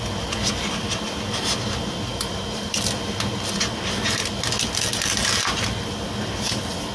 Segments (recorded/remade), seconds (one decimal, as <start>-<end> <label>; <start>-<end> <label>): 0.0-2.1 recorded; 2.1-2.8 remade; 2.8-6.9 recorded

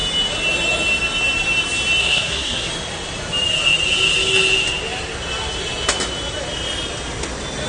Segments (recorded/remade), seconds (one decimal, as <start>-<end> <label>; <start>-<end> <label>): 0.0-2.0 recorded; 2.0-2.7 remade; 2.7-7.7 recorded

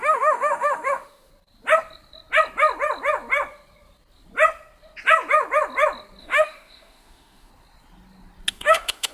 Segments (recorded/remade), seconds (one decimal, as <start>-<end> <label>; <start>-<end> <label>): 0.0-1.3 remade; 1.3-6.2 recorded; 6.2-7.5 remade; 7.5-8.5 recorded; 8.5-9.1 remade

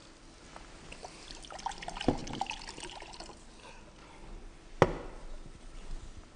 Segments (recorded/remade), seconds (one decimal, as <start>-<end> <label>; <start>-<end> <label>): 0.0-6.4 recorded